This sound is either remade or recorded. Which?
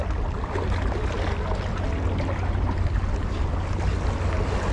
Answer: recorded